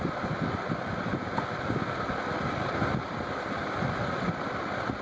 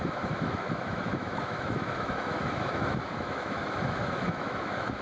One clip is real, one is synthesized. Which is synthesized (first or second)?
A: second